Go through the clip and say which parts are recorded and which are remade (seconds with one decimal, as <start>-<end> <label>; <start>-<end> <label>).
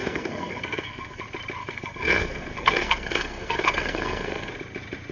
0.0-1.2 remade; 1.2-1.6 recorded; 1.6-4.5 remade; 4.5-5.1 recorded